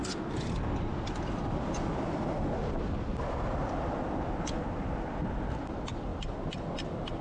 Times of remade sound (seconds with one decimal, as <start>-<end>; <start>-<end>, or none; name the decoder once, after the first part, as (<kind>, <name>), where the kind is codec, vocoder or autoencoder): none